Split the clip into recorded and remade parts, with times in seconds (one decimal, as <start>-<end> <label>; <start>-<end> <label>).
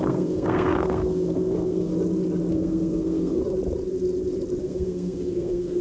0.0-1.9 remade; 1.9-2.5 recorded; 2.5-3.4 remade; 3.4-4.6 recorded; 4.6-5.8 remade